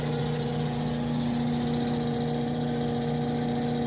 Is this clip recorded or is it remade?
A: recorded